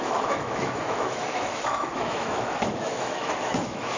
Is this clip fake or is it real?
fake